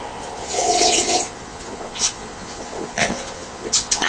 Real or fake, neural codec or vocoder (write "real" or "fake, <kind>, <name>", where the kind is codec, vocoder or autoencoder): fake, vocoder, Vocos